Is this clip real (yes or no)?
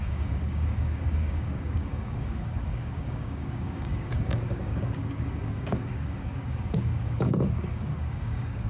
no